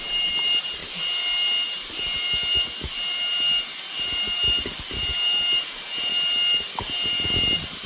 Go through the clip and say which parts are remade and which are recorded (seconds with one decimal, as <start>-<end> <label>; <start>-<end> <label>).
0.0-0.8 remade; 0.8-3.9 recorded; 3.9-6.1 remade; 6.1-6.8 recorded; 6.8-7.9 remade